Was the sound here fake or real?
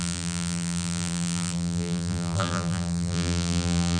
fake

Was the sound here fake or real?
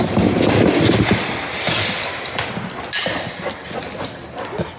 real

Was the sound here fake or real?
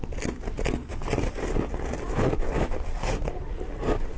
real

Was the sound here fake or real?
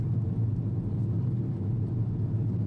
real